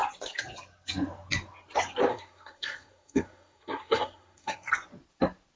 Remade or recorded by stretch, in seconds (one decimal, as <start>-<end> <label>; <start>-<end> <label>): 0.0-2.1 recorded; 2.1-4.7 remade; 4.7-5.6 recorded